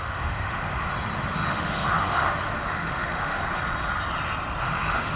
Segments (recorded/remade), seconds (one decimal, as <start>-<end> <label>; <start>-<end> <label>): 0.0-0.9 remade; 0.9-1.5 recorded; 1.5-3.4 remade; 3.4-4.6 recorded; 4.6-5.2 remade